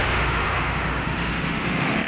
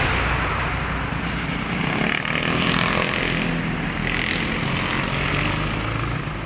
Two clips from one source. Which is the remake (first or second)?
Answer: first